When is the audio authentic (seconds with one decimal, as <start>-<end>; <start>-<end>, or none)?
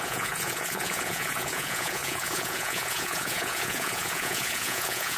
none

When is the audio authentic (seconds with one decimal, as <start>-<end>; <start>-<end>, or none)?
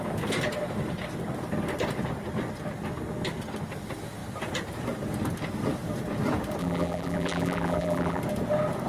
0.0-6.6; 8.2-8.9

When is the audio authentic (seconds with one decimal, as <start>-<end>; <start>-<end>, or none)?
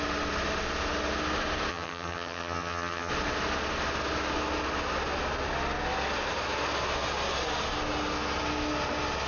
0.0-1.7; 3.1-9.3